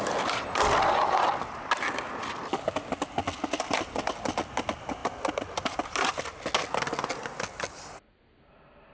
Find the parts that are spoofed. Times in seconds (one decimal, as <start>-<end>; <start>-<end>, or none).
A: none